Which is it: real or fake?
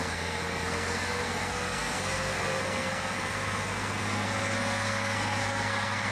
fake